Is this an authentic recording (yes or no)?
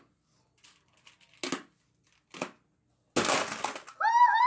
yes